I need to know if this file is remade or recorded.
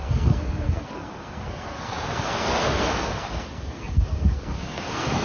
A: remade